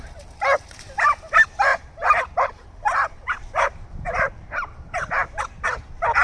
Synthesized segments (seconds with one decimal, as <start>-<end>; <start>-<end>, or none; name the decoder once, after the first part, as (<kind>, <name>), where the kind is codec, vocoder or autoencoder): 1.7-5.4 (vocoder, BigVGAN v2)